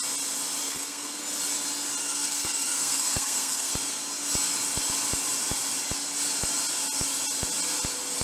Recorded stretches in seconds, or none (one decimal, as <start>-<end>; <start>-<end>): 0.0-0.6; 1.2-2.0; 3.7-8.2